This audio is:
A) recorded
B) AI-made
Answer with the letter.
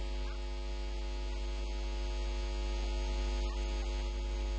A